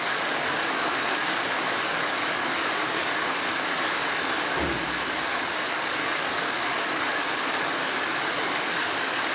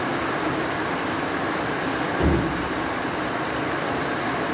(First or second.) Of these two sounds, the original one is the second